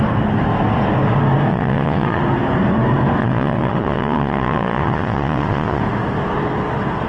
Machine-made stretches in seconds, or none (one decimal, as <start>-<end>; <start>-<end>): 1.5-2.2; 3.2-5.8